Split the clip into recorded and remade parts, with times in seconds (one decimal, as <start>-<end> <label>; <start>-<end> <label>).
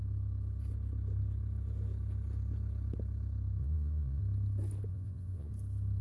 0.0-3.6 recorded; 3.6-4.2 remade; 4.2-4.9 recorded; 4.9-5.5 remade; 5.5-6.0 recorded